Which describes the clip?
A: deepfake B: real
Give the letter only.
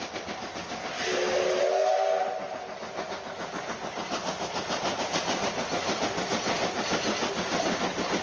B